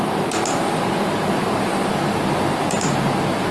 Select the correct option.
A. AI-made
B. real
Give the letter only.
B